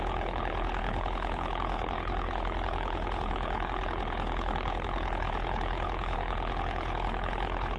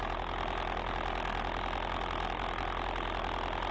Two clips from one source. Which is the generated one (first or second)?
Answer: first